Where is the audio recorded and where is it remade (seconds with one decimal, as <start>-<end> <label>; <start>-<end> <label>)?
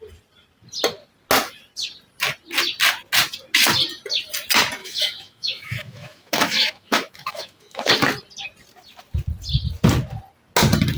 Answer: 0.0-4.8 recorded; 4.8-7.9 remade; 7.9-11.0 recorded